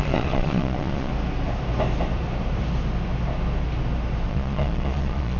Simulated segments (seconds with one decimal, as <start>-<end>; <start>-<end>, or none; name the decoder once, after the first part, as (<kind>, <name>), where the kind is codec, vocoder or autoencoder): 0.0-1.1 (vocoder, Vocos); 4.3-5.4